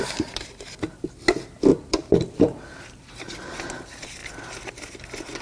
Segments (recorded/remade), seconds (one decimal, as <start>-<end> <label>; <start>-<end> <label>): 0.0-1.7 recorded; 1.7-3.1 remade; 3.1-4.2 recorded; 4.2-4.7 remade; 4.7-5.4 recorded